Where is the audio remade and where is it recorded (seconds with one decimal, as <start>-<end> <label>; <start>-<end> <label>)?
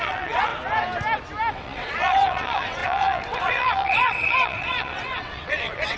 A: 0.0-0.5 remade; 0.5-1.5 recorded; 1.5-6.0 remade